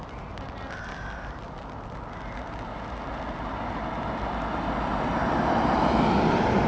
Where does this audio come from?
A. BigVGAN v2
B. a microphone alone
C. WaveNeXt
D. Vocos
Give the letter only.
B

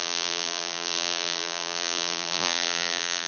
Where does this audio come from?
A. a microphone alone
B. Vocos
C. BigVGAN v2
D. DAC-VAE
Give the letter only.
C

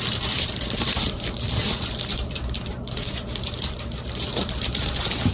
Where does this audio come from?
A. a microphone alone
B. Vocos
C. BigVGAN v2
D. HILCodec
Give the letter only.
C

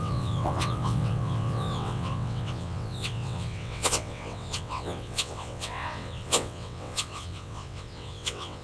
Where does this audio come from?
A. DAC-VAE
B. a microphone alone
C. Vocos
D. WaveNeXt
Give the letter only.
D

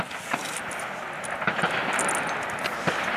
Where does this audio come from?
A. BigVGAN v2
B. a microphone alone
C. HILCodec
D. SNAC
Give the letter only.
B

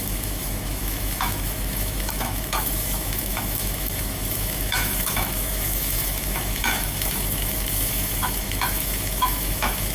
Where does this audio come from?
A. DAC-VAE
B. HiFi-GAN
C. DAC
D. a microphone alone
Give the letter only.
A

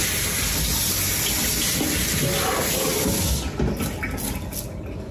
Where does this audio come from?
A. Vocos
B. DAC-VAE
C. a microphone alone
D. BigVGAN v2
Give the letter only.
C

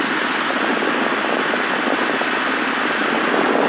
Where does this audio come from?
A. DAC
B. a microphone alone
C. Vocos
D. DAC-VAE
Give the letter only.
B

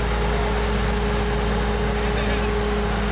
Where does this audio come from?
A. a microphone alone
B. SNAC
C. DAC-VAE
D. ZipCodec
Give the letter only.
A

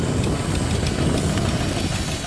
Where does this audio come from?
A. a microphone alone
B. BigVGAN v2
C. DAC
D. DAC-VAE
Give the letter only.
A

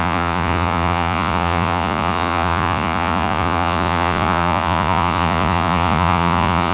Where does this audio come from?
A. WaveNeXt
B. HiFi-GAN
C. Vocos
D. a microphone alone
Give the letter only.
C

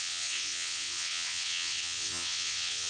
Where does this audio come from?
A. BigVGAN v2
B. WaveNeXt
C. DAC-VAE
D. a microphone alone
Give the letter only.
B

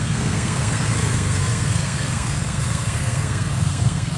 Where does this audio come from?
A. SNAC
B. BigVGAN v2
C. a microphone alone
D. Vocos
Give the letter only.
A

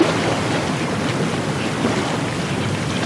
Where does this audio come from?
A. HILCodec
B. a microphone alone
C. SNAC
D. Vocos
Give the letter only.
B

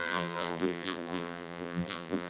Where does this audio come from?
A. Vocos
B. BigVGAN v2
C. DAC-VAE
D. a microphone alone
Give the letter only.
B